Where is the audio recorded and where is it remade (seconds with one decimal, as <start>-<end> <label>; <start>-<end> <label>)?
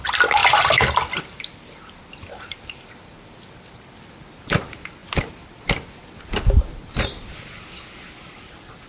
0.0-8.9 recorded